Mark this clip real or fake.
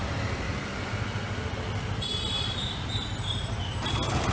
real